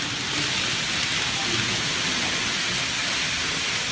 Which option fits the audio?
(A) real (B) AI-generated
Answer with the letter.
A